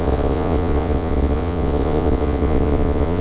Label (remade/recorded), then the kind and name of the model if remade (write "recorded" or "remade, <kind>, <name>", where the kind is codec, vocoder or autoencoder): remade, vocoder, Vocos